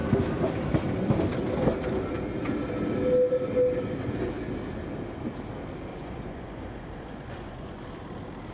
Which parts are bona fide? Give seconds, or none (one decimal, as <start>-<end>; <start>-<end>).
0.0-5.9; 7.8-8.5